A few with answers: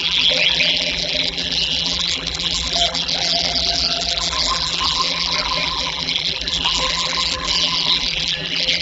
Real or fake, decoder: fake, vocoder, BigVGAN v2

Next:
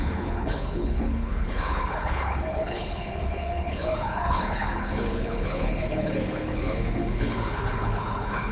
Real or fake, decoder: fake, codec, HILCodec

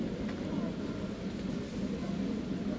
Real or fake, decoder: real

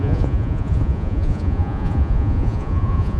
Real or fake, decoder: fake, vocoder, Vocos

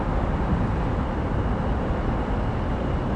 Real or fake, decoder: real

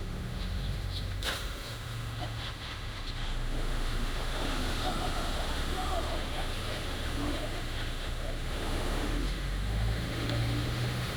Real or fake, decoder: fake, autoencoder, DAC-VAE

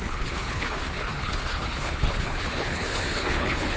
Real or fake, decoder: fake, codec, HILCodec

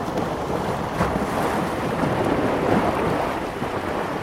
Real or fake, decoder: real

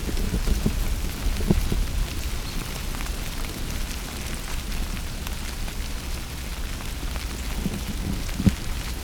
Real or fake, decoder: real